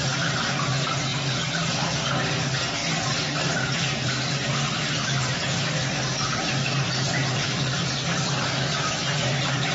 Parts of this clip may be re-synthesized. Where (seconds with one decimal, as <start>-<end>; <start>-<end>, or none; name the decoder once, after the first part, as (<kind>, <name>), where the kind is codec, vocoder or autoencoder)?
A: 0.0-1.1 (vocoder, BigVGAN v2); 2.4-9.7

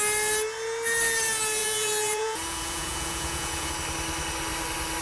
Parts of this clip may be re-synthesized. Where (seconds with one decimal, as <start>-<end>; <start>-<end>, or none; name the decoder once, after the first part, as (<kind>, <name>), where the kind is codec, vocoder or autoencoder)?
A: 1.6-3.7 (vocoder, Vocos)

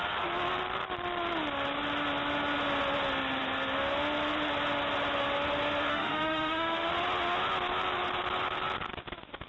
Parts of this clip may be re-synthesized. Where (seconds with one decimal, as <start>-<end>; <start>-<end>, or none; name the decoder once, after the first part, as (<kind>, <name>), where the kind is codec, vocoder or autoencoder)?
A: 5.9-6.9 (autoencoder, DAC-VAE)

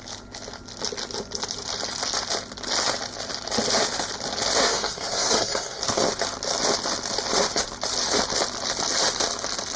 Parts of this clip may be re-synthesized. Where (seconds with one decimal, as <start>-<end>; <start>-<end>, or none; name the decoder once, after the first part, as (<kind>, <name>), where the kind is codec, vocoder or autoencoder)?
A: 4.6-5.8 (codec, SNAC)

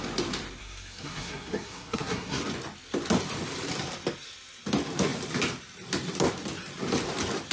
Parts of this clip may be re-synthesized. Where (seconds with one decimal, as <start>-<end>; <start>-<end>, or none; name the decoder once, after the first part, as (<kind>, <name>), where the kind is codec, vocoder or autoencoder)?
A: 0.6-2.4 (codec, SNAC)

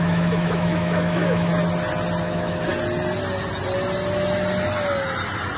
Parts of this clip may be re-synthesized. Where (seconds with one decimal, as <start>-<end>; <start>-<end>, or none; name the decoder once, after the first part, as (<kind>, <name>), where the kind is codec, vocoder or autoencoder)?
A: 0.0-1.5 (autoencoder, DAC-VAE); 2.2-2.7

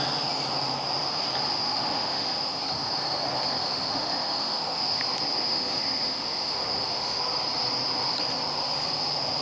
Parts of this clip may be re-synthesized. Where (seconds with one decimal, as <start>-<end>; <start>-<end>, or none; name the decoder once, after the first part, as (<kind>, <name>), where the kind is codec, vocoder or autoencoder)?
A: 1.5-2.6 (autoencoder, DAC-VAE); 3.6-5.0; 5.4-7.2

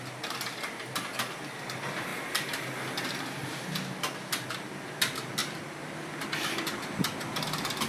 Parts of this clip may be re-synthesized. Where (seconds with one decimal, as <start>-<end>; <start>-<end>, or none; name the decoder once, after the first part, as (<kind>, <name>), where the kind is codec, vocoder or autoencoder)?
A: none